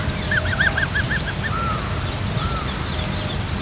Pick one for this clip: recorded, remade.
recorded